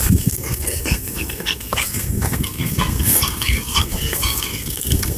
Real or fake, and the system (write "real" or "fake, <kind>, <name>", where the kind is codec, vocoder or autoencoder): fake, codec, SNAC